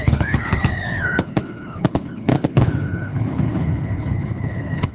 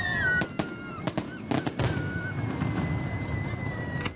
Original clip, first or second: second